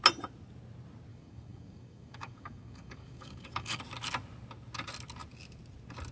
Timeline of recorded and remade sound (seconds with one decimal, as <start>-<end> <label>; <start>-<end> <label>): 0.0-1.1 recorded; 1.1-3.8 remade; 3.8-6.1 recorded